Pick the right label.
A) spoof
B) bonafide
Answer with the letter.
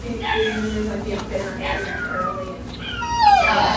B